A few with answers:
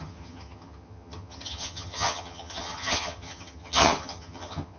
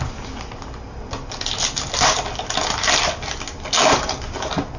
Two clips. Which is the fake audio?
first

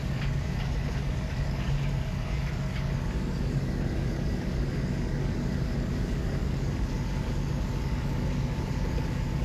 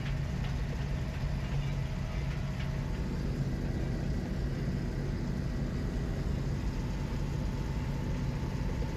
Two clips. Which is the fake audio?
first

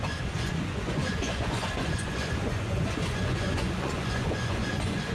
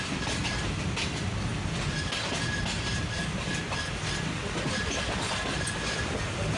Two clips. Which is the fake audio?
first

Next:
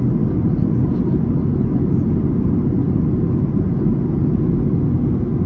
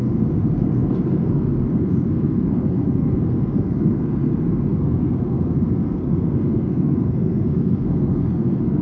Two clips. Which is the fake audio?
second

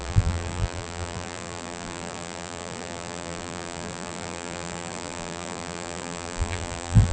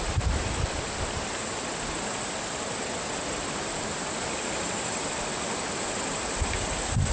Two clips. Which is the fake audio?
first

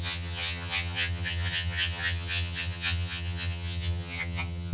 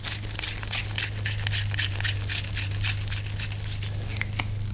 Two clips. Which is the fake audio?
first